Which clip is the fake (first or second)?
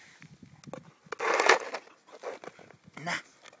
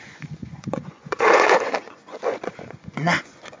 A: second